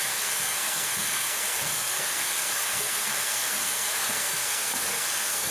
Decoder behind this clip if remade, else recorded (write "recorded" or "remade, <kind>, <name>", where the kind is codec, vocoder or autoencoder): remade, codec, SNAC